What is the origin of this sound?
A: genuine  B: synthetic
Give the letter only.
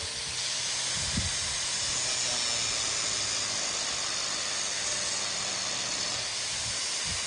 A